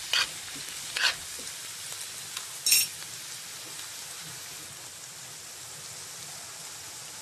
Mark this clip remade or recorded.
recorded